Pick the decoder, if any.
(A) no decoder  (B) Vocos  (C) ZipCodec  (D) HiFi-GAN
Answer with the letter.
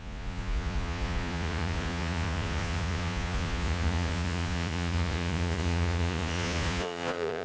B